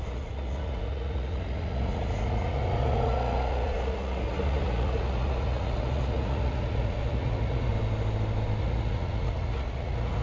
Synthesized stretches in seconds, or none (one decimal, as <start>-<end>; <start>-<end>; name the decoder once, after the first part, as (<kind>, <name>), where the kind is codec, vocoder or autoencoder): 0.0-7.7 (vocoder, Vocos); 8.6-10.2